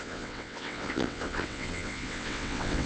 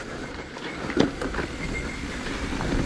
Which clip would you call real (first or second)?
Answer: second